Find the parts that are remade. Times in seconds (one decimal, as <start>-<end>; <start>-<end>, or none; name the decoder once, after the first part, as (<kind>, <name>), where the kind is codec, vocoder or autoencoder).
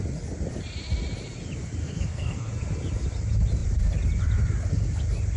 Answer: 1.8-2.5 (codec, SNAC)